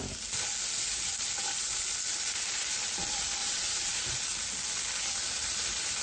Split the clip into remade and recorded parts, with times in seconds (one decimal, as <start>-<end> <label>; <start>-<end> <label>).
0.0-3.4 recorded; 3.4-4.0 remade; 4.0-6.0 recorded